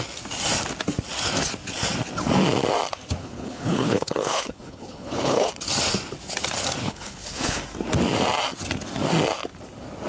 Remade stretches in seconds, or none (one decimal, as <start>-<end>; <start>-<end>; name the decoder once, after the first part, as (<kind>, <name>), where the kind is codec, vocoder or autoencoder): 3.2-5.5 (codec, HILCodec); 6.8-7.6